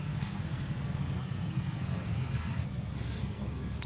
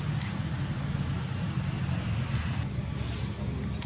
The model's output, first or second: first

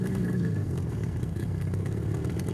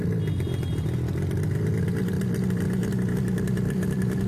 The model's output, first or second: first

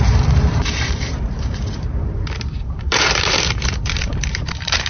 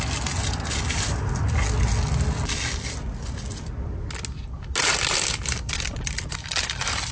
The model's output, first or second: first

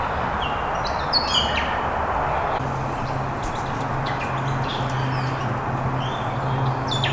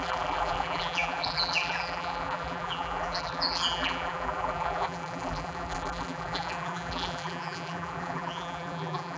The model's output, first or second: second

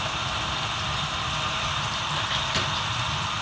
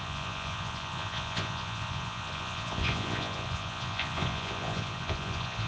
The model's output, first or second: second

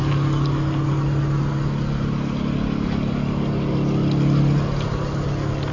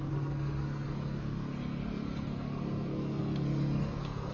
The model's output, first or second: second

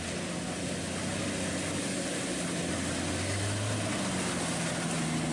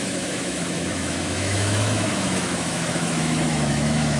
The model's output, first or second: second